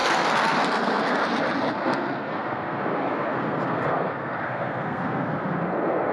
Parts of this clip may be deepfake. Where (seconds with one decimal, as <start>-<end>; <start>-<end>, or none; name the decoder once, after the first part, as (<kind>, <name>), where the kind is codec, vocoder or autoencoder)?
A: 0.0-1.2 (codec, SNAC); 1.7-6.1